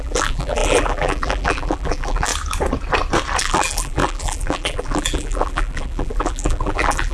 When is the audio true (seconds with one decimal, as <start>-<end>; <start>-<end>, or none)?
2.3-3.4